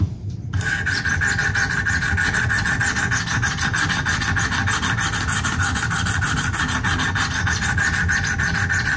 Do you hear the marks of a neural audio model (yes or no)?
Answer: no